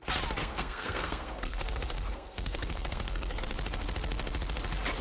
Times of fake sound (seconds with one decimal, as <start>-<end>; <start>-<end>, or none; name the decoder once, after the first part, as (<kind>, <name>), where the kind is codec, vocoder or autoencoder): 0.4-3.4 (codec, SNAC)